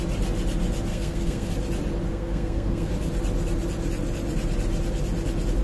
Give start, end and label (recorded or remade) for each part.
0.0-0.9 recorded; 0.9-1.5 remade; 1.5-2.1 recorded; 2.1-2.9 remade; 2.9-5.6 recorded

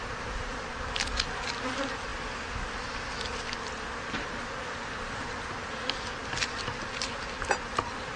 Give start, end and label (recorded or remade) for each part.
0.0-8.2 recorded

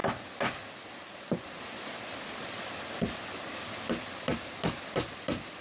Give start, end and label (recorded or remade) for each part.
0.0-5.6 recorded

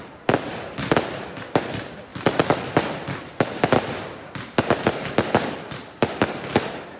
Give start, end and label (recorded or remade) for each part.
0.0-7.0 recorded

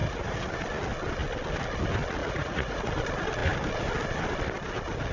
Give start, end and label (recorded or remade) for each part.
0.0-0.6 remade; 0.6-2.2 recorded; 2.2-2.9 remade; 2.9-5.1 recorded

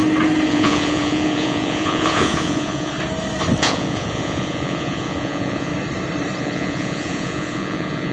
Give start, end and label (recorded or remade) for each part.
0.0-0.5 recorded; 0.5-2.9 remade; 2.9-3.6 recorded; 3.6-5.7 remade; 5.7-6.4 recorded; 6.4-8.1 remade

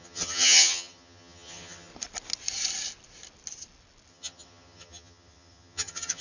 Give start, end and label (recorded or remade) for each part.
0.0-1.9 remade; 1.9-4.1 recorded; 4.1-6.2 remade